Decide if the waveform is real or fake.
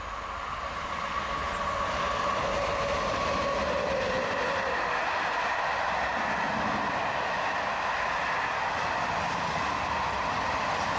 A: real